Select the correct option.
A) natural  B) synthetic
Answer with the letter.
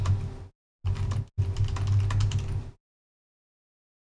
A